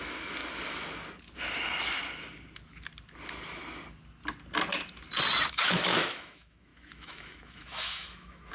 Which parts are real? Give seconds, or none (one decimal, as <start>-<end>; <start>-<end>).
0.4-5.5